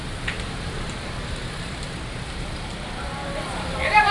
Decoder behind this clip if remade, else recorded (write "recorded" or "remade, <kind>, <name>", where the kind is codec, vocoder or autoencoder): remade, vocoder, BigVGAN v2